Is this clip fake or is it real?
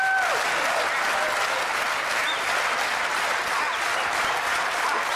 real